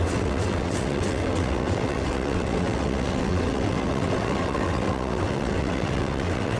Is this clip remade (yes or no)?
yes